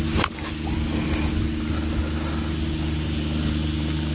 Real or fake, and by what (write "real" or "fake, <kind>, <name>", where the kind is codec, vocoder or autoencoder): real